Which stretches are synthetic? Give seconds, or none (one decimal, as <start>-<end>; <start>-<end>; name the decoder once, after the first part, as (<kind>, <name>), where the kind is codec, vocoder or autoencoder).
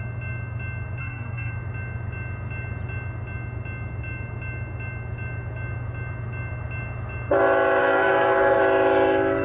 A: 1.0-1.5 (codec, SNAC); 7.8-8.6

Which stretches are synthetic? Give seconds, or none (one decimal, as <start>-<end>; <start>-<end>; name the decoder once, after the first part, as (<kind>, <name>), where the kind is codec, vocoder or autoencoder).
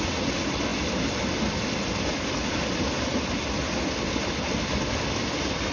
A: none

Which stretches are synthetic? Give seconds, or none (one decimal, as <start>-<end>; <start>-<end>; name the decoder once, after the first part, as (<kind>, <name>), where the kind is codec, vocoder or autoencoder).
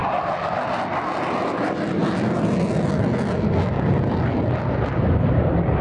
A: none